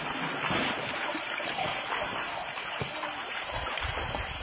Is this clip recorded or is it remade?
remade